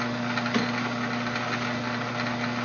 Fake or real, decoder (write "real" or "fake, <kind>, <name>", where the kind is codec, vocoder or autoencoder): real